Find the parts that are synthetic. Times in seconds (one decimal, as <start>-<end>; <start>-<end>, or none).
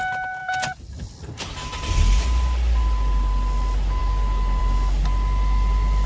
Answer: none